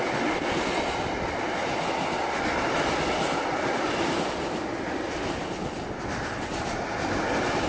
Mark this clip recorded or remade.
recorded